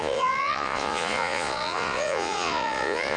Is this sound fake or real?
fake